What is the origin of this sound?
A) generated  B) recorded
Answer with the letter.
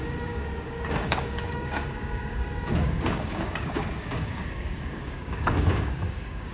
A